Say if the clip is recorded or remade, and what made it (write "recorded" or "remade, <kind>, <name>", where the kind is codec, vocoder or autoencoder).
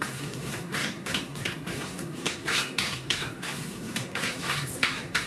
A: remade, codec, SNAC